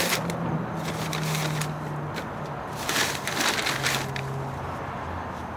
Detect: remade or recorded recorded